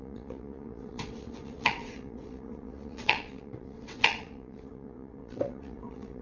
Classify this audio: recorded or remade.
remade